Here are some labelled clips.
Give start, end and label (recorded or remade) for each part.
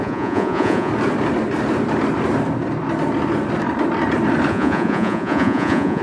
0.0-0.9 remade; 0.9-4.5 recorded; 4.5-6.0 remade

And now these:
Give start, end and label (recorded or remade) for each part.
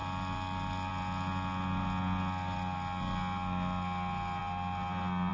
0.0-5.3 recorded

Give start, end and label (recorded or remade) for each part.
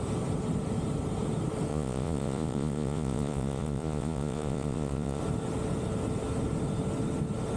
0.0-1.7 recorded; 1.7-5.2 remade; 5.2-7.6 recorded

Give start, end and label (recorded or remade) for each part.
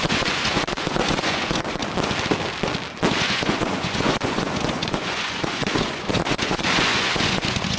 0.0-1.8 remade; 1.8-3.2 recorded; 3.2-7.8 remade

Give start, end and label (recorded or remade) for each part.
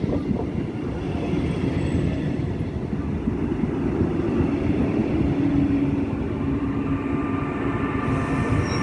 0.0-8.8 recorded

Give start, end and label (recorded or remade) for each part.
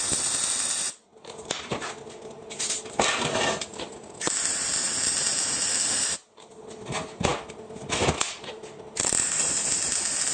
0.0-10.3 recorded